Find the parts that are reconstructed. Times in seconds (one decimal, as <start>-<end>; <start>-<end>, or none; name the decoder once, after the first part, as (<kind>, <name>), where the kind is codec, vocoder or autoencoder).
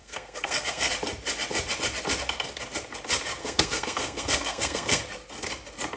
0.0-0.9 (codec, SNAC); 3.4-5.0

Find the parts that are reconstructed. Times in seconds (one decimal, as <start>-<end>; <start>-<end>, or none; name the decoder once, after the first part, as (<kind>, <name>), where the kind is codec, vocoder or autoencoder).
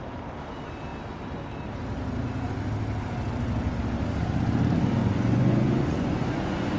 5.0-6.8 (vocoder, Vocos)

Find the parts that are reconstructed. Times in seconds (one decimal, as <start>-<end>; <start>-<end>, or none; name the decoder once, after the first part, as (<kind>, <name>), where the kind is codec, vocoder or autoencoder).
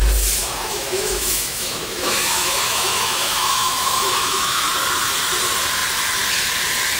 0.4-4.6 (autoencoder, DAC-VAE)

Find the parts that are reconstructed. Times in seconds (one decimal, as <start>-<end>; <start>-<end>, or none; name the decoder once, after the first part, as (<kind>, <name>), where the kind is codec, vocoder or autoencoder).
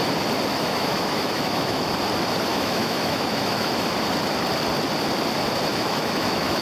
0.5-1.9 (autoencoder, DAC-VAE); 2.5-3.9; 5.7-6.6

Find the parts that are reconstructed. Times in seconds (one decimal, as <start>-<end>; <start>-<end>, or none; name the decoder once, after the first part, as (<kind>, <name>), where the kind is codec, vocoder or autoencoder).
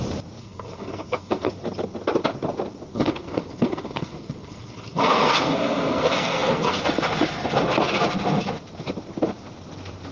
0.4-1.5 (codec, SNAC); 2.9-6.8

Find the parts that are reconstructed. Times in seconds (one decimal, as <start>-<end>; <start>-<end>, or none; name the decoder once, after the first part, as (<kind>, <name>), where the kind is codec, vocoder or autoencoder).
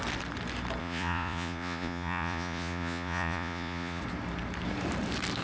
0.8-4.0 (vocoder, Vocos)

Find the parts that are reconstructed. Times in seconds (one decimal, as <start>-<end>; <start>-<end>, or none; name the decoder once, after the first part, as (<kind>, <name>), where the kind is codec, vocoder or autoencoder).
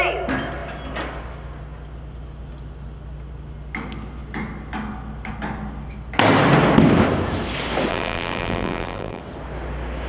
7.9-9.2 (vocoder, BigVGAN v2)